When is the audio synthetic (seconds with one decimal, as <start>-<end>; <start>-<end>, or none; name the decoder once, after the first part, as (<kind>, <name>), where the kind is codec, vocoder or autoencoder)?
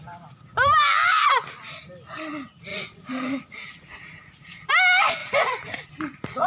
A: 2.7-4.7 (vocoder, Vocos); 5.2-5.9